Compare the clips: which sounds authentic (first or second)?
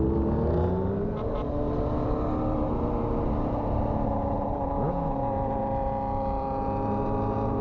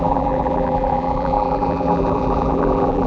first